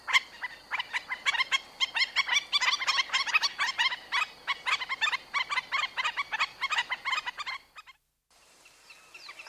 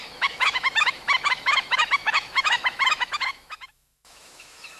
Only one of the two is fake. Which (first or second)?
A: second